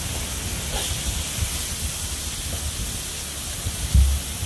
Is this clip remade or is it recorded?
recorded